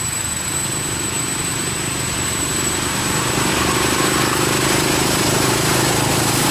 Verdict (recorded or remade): remade